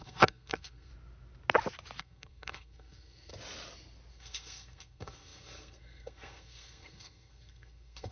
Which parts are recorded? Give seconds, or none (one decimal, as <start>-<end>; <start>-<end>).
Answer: 0.9-2.0; 3.3-4.1